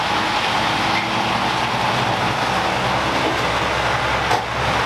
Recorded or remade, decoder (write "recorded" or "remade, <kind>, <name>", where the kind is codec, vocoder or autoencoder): recorded